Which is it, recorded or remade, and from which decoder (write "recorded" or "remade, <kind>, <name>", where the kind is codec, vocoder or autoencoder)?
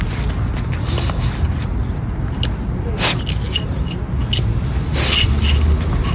recorded